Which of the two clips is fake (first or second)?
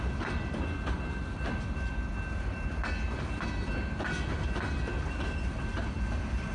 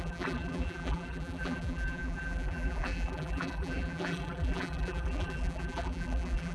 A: second